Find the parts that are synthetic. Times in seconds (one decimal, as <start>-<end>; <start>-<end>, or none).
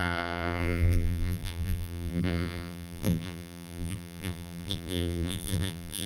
0.0-6.1